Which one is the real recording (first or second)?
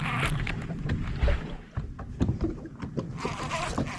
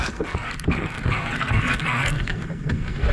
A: first